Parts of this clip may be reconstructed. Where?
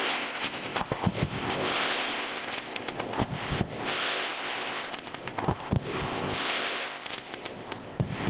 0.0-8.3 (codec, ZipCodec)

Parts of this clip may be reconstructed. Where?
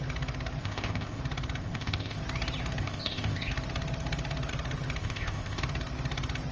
0.6-1.2 (codec, ZipCodec); 1.6-2.2; 2.8-3.5; 5.0-5.6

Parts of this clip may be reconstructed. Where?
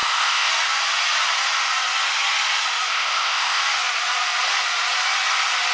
0.0-0.5 (codec, ZipCodec); 2.9-3.6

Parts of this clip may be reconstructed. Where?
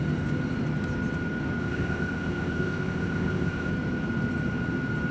1.6-3.7 (codec, ZipCodec)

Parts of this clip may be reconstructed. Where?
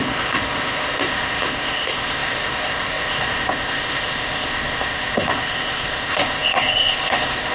0.0-7.5 (codec, ZipCodec)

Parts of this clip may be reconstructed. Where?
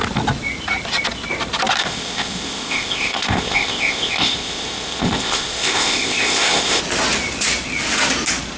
1.8-6.8 (codec, ZipCodec)